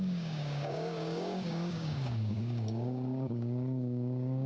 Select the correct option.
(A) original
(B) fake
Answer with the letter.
B